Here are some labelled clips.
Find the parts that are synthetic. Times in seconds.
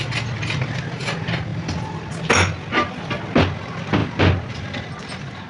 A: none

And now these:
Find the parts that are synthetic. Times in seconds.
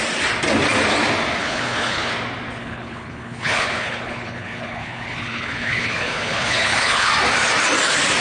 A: 1.4-2.1 (codec, HILCodec); 2.6-7.1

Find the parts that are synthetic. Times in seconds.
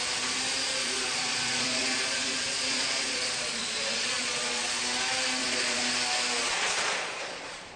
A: 0.8-4.8 (vocoder, Vocos); 5.4-5.9; 6.4-7.8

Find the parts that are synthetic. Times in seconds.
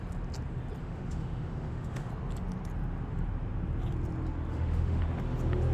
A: 0.8-2.1 (autoencoder, DAC-VAE); 4.5-5.0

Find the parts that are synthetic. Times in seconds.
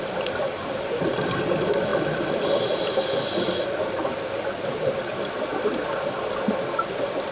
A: none